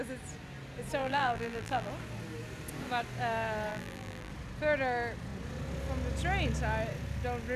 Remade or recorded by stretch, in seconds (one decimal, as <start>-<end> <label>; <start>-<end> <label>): 0.0-1.0 recorded; 1.0-1.9 remade; 1.9-3.7 recorded; 3.7-4.3 remade; 4.3-7.6 recorded